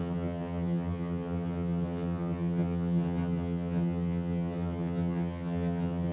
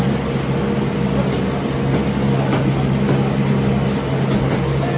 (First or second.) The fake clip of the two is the first